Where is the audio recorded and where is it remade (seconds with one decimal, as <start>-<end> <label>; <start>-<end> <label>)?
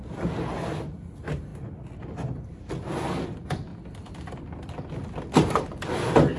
0.0-6.4 recorded